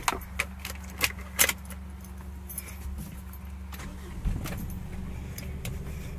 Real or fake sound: real